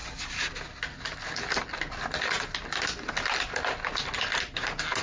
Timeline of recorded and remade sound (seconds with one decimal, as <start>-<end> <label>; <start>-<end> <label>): 0.0-5.0 recorded